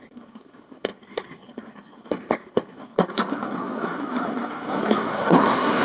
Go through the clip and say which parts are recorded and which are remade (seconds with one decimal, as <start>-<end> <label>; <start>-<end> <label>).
0.0-5.8 remade